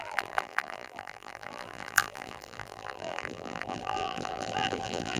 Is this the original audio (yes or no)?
no